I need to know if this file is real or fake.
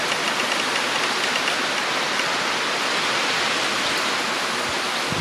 real